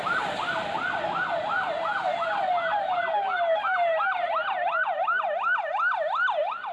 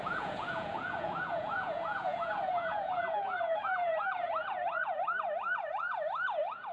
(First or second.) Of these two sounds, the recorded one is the first